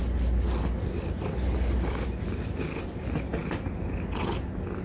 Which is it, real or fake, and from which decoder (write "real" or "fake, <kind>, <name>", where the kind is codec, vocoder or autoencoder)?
real